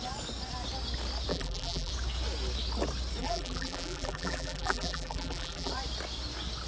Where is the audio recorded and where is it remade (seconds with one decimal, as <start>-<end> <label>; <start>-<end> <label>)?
0.0-1.3 recorded; 1.3-1.9 remade; 1.9-3.2 recorded; 3.2-5.7 remade; 5.7-6.7 recorded